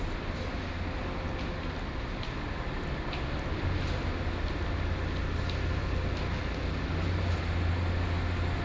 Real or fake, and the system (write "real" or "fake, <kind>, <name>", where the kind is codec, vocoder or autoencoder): real